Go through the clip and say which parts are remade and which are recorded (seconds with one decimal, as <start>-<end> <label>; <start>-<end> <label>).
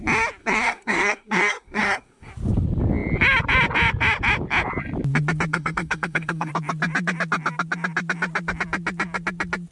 0.0-0.4 recorded; 0.4-2.3 remade; 2.3-5.5 recorded; 5.5-6.5 remade; 6.5-9.7 recorded